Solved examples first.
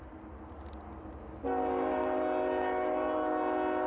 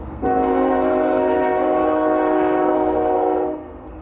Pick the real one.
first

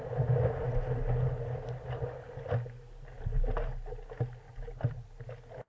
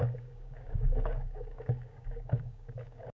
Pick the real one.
first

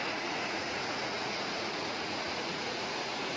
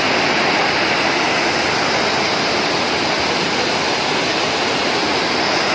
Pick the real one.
second